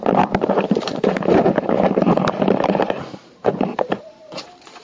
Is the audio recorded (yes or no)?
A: no